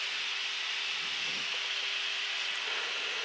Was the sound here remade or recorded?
recorded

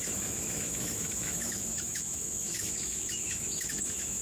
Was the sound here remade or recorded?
remade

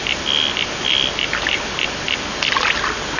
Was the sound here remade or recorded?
recorded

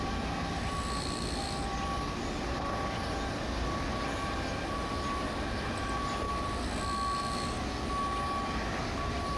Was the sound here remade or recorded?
recorded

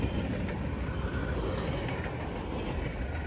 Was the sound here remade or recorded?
recorded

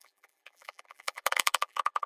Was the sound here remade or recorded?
remade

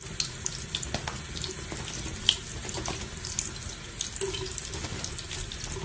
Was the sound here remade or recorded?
recorded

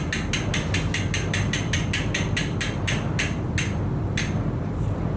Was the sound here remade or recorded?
recorded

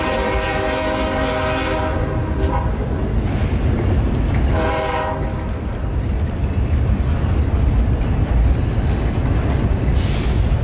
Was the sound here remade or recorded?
recorded